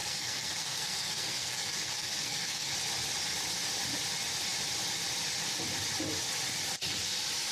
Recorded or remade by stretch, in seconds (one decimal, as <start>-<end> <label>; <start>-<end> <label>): 0.0-2.7 remade; 2.7-7.5 recorded